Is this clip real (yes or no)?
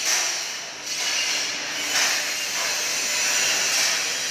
yes